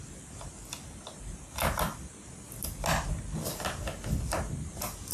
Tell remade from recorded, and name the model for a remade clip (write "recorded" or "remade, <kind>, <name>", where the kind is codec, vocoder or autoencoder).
recorded